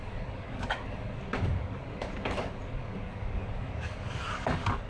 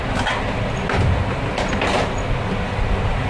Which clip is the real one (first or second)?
second